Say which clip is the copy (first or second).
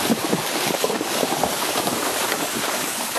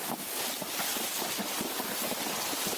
first